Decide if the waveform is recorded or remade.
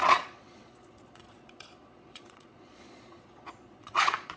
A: remade